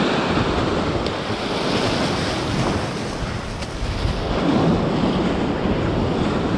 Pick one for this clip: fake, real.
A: real